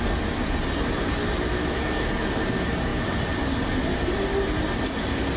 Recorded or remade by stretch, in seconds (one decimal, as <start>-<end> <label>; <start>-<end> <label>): 0.0-1.5 recorded; 1.5-2.1 remade; 2.1-5.4 recorded

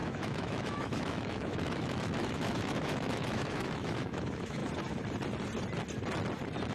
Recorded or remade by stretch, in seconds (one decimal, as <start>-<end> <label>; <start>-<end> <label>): 0.0-4.6 remade; 4.6-6.7 recorded

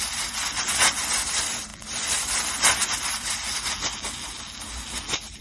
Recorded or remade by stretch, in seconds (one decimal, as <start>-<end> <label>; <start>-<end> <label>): 0.0-5.4 recorded

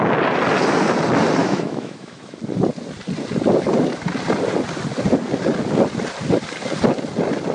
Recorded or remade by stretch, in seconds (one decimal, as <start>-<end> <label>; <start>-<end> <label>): 0.0-1.4 recorded; 1.4-2.4 remade; 2.4-7.5 recorded

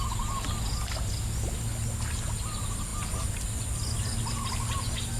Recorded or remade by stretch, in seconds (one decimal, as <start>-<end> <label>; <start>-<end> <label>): 0.0-5.2 recorded

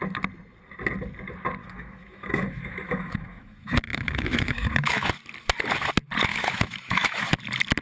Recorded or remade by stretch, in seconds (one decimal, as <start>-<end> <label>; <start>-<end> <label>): 0.0-1.6 recorded; 1.6-5.1 remade; 5.1-6.3 recorded; 6.3-7.3 remade; 7.3-7.8 recorded

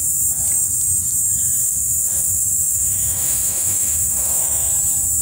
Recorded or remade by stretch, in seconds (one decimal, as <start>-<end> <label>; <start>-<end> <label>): 0.0-1.6 recorded; 1.6-4.7 remade; 4.7-5.2 recorded